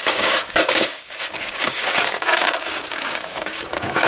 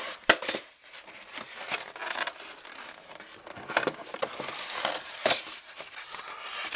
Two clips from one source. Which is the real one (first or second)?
second